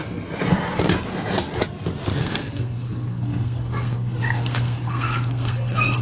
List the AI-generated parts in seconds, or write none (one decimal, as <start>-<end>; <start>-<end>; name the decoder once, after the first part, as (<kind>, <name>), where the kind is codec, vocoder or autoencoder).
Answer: 2.2-6.0 (codec, SNAC)